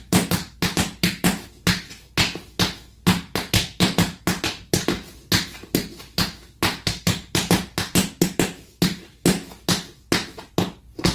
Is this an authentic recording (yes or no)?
yes